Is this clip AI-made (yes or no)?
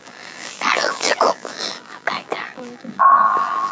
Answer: yes